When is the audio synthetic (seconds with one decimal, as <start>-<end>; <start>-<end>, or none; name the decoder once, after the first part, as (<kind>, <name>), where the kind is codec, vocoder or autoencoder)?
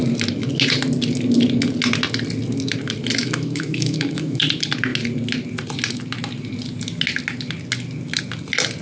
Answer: 3.2-4.4 (autoencoder, DAC-VAE)